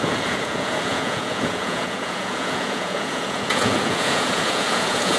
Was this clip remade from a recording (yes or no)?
yes